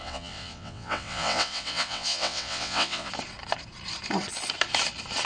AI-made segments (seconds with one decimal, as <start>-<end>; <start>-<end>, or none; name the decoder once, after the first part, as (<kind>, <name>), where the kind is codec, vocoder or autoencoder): 0.0-3.1 (vocoder, WaveNeXt)